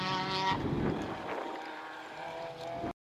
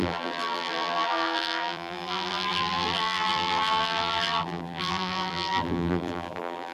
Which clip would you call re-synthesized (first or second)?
second